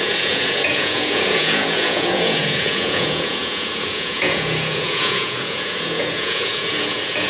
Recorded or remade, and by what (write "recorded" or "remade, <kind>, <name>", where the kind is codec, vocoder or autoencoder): remade, vocoder, Vocos